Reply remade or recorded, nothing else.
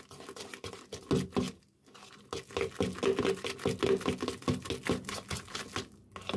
recorded